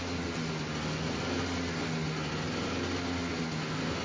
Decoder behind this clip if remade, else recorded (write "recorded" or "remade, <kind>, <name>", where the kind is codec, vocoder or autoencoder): recorded